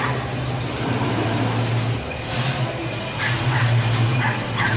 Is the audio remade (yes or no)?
no